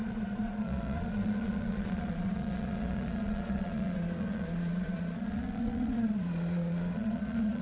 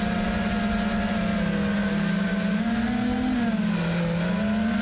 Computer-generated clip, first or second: first